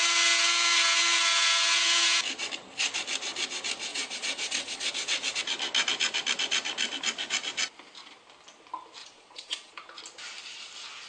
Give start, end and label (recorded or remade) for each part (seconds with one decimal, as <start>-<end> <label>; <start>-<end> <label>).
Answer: 0.0-3.9 recorded; 3.9-4.9 remade; 4.9-9.0 recorded; 9.0-9.7 remade; 9.7-11.1 recorded